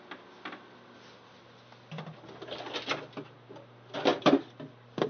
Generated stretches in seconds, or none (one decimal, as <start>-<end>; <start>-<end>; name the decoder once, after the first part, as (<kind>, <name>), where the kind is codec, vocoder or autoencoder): none